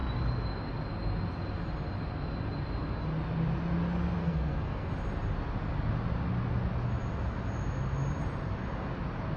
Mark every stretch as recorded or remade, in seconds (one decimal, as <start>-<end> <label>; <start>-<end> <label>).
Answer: 0.0-4.2 recorded; 4.2-4.9 remade; 4.9-9.4 recorded